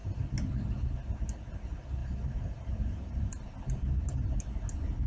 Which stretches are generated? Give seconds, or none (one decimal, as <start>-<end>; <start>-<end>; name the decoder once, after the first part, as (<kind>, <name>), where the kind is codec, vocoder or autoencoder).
2.0-3.4 (vocoder, BigVGAN v2)